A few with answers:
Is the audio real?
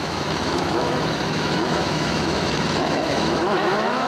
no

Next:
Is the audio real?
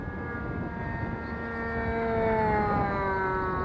yes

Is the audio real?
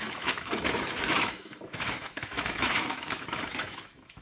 no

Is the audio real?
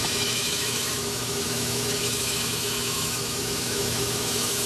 no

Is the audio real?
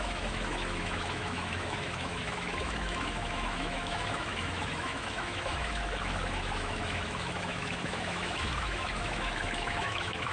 no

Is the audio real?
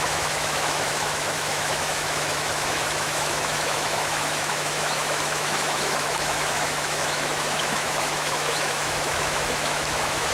no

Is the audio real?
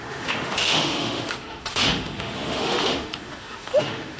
no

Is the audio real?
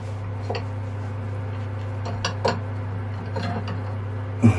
yes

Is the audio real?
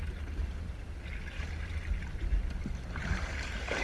yes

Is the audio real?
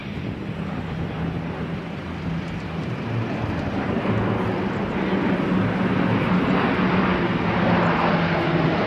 yes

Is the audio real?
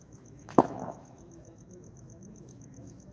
no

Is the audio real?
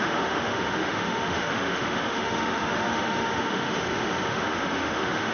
no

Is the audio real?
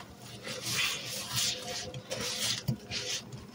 yes